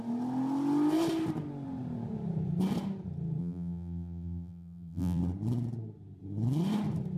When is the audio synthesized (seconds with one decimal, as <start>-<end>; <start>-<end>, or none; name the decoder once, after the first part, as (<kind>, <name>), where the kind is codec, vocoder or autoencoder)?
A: 3.4-5.2 (vocoder, BigVGAN v2)